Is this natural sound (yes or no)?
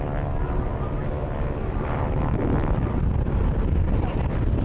yes